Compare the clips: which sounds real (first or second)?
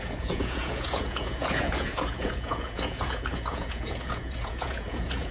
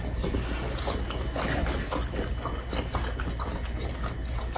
second